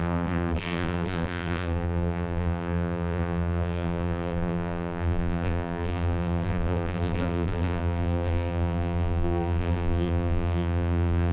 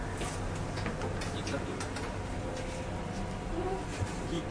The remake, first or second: first